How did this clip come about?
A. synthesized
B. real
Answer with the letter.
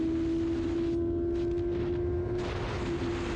B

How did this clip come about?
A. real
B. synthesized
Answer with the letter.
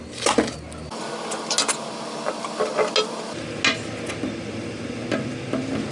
A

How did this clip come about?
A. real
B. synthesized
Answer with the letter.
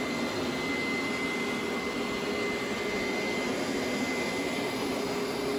A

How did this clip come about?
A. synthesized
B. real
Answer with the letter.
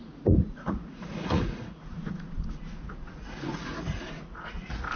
A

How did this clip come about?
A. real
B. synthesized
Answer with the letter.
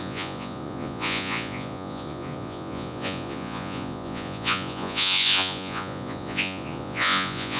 B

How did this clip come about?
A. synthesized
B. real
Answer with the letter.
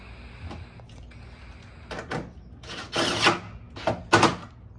B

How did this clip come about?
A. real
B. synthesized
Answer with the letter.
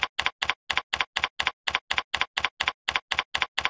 A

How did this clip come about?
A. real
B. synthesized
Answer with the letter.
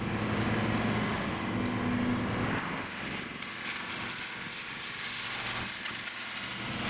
A